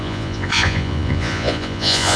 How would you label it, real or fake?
fake